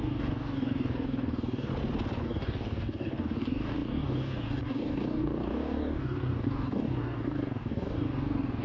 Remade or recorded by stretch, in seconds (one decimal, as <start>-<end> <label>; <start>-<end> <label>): 0.0-1.7 remade; 1.7-2.2 recorded; 2.2-8.6 remade

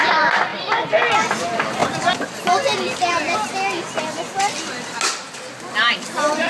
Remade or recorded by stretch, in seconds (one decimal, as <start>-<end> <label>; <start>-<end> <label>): 0.0-6.5 recorded

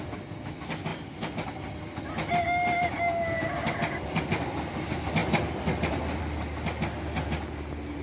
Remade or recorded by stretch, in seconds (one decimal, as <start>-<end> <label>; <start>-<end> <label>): 0.0-8.0 recorded

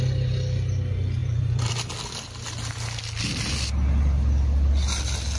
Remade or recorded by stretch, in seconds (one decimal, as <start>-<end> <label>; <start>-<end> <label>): 0.0-1.2 recorded; 1.2-1.7 remade; 1.7-5.4 recorded

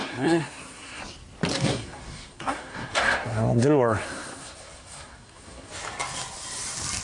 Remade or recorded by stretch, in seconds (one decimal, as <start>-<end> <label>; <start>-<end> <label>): 0.0-1.0 remade; 1.0-1.5 recorded; 1.5-5.7 remade; 5.7-7.0 recorded

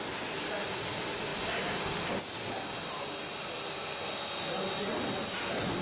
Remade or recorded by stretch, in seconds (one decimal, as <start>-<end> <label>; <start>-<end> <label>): 0.0-5.8 recorded

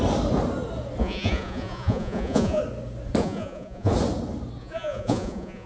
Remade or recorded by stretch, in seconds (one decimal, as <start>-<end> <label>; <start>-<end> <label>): 0.0-1.0 recorded; 1.0-2.6 remade; 2.6-3.2 recorded; 3.2-3.9 remade; 3.9-4.6 recorded; 4.6-5.7 remade